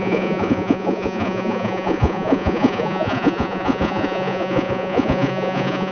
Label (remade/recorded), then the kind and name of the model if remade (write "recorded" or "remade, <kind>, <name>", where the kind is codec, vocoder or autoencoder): remade, vocoder, Vocos